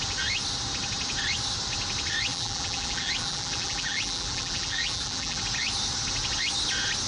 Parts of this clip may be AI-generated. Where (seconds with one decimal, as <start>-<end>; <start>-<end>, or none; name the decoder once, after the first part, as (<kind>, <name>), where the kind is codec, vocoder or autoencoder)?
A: 2.3-5.4 (vocoder, BigVGAN v2)